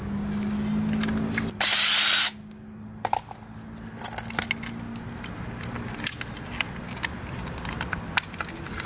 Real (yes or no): yes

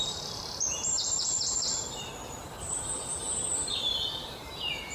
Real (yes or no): no